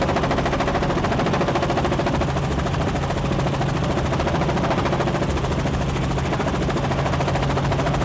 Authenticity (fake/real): real